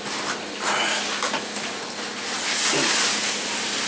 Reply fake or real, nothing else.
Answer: real